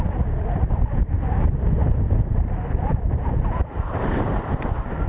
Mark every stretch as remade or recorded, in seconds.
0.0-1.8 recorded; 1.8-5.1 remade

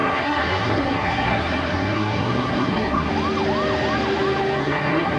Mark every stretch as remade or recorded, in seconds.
0.0-3.1 remade; 3.1-4.6 recorded; 4.6-5.2 remade

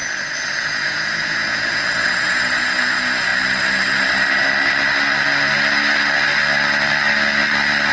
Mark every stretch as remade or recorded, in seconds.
0.0-0.6 recorded; 0.6-3.3 remade; 3.3-7.9 recorded

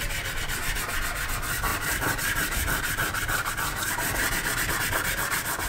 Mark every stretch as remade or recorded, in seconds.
0.0-1.7 recorded; 1.7-3.5 remade; 3.5-5.7 recorded

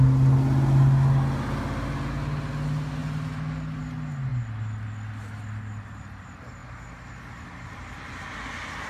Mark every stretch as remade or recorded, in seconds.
0.0-8.9 recorded

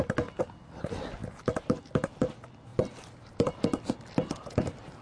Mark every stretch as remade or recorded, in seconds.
0.0-5.0 recorded

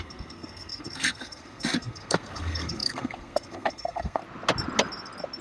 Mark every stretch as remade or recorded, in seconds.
0.0-4.2 remade; 4.2-5.4 recorded

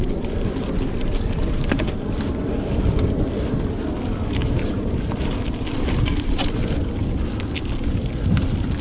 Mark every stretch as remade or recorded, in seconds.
0.0-4.4 recorded; 4.4-5.0 remade; 5.0-8.8 recorded